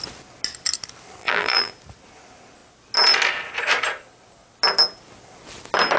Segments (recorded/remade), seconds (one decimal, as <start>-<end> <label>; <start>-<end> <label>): 0.0-1.2 recorded; 1.2-1.7 remade; 1.7-6.0 recorded